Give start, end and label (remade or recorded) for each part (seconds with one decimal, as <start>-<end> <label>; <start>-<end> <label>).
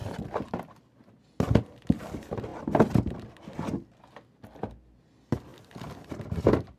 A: 0.0-1.1 remade; 1.1-2.5 recorded; 2.5-4.0 remade; 4.0-6.8 recorded